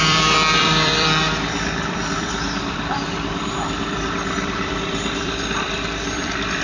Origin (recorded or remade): remade